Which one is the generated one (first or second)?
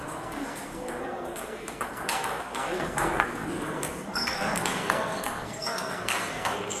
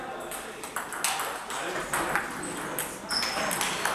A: first